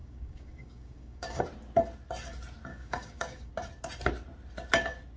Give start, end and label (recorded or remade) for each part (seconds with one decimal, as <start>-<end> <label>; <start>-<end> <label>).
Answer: 0.0-1.4 remade; 1.4-2.7 recorded; 2.7-3.5 remade; 3.5-5.2 recorded